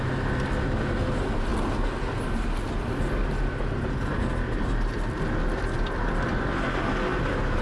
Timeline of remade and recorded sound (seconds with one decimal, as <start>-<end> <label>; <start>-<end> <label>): 0.0-7.6 recorded